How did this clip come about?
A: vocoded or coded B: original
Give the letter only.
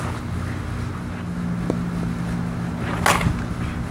B